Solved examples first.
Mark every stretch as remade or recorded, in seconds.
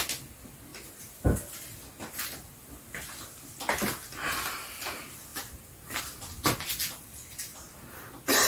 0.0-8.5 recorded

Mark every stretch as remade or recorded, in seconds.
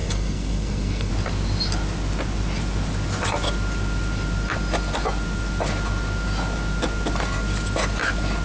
0.0-1.1 remade; 1.1-8.4 recorded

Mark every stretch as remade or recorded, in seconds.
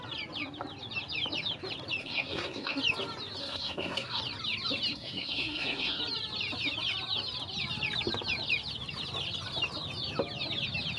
0.0-2.0 recorded; 2.0-2.8 remade; 2.8-3.4 recorded; 3.4-4.2 remade; 4.2-4.9 recorded; 4.9-6.0 remade; 6.0-11.0 recorded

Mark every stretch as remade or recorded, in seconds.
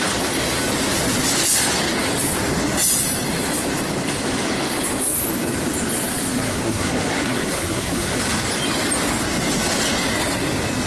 0.0-6.1 recorded; 6.1-8.2 remade; 8.2-10.9 recorded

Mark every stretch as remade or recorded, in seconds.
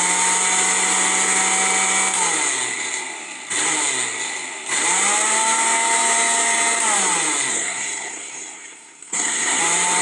0.0-7.5 recorded; 7.5-9.6 remade; 9.6-10.0 recorded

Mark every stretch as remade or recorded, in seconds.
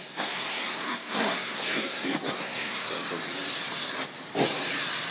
0.0-2.9 remade; 2.9-5.1 recorded